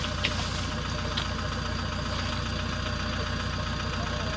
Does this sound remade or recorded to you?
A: recorded